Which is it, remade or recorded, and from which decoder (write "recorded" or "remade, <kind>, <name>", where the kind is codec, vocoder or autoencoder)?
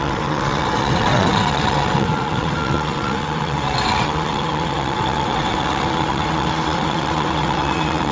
remade, vocoder, WaveNeXt